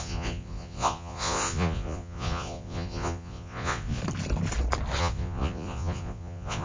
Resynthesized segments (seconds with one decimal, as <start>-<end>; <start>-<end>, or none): 0.0-4.0; 5.0-6.6